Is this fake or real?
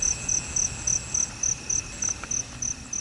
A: real